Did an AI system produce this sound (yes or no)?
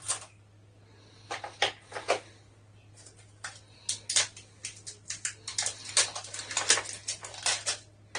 no